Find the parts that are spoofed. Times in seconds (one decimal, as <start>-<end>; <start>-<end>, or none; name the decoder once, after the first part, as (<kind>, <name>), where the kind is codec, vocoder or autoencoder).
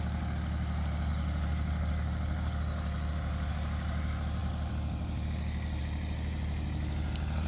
1.1-3.5 (vocoder, BigVGAN v2); 4.4-5.8